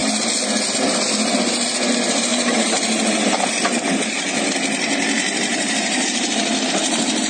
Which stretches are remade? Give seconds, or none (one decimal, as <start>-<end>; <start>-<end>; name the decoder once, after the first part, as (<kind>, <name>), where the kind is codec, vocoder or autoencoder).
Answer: 2.3-4.2 (vocoder, BigVGAN v2); 5.5-6.3